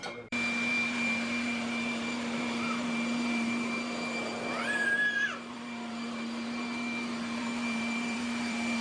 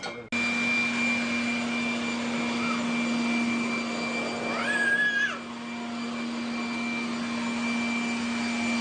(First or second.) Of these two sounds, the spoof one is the first